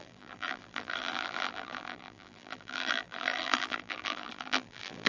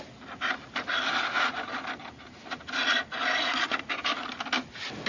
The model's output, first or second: first